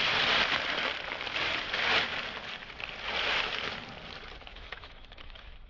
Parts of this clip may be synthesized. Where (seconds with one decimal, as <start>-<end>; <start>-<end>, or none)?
4.5-5.7